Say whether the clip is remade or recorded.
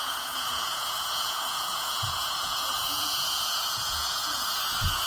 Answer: remade